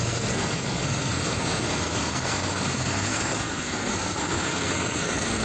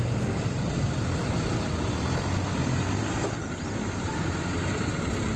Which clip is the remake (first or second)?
first